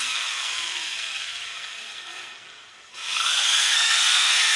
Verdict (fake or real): fake